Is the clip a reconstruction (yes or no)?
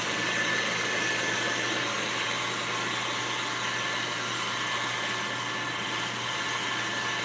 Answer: no